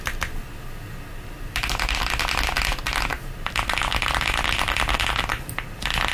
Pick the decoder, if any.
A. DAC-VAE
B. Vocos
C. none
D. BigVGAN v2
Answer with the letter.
C